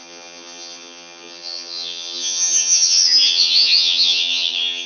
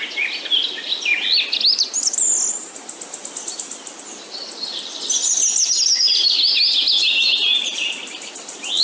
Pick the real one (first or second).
second